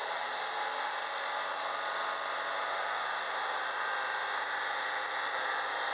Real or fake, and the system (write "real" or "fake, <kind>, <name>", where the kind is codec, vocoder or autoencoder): real